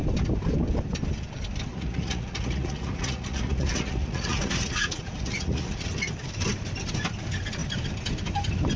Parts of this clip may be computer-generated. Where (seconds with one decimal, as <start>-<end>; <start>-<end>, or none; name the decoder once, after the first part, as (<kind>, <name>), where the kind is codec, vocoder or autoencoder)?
1.7-5.9 (vocoder, Vocos)